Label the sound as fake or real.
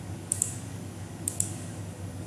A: fake